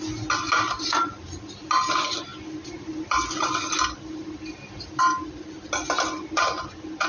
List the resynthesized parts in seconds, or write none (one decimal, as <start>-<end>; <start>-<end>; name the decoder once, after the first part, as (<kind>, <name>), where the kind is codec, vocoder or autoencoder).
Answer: none